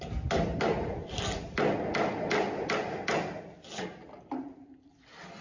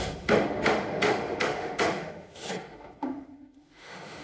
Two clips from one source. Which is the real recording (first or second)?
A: first